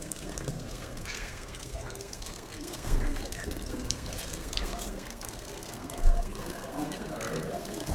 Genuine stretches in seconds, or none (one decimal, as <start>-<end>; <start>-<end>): none